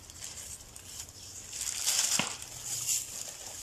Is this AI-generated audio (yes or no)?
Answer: no